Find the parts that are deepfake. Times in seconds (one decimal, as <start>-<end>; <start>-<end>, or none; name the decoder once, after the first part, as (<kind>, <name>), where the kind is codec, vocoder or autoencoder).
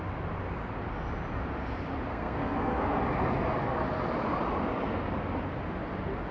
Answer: 2.1-3.0 (codec, SNAC)